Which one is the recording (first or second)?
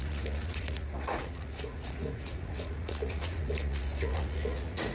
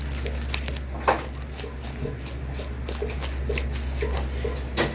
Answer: second